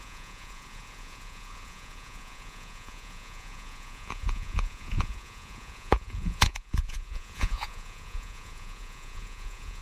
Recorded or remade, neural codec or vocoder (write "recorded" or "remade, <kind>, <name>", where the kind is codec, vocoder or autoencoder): remade, vocoder, Vocos